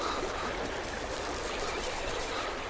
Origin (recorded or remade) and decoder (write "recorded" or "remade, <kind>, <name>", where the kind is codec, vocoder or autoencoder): recorded